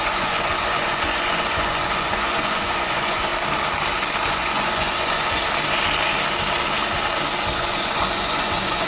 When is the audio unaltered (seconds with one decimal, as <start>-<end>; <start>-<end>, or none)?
3.3-4.3; 5.4-7.5